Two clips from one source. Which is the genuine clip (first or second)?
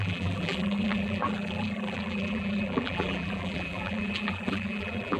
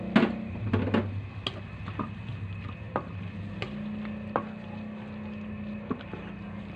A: second